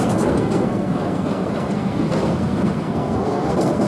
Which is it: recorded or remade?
remade